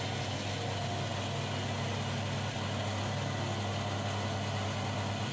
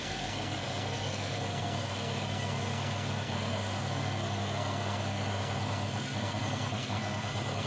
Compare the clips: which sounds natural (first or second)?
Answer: first